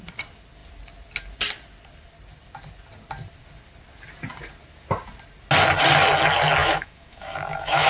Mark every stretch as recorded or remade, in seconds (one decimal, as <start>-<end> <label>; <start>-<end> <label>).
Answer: 0.0-6.6 recorded; 6.6-7.9 remade